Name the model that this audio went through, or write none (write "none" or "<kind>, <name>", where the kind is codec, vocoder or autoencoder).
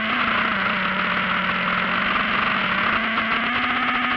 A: none